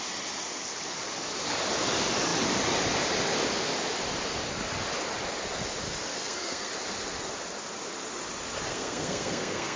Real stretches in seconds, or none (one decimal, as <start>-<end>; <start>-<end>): 0.0-6.1; 6.7-8.7